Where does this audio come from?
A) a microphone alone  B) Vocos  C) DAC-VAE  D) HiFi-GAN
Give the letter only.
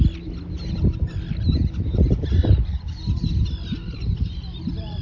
A